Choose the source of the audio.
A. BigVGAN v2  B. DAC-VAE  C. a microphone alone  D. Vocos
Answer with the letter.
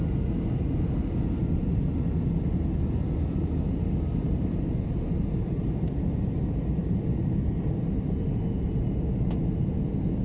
C